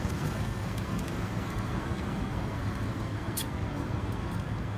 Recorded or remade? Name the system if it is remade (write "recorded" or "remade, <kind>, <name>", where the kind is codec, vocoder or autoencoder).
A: remade, codec, SNAC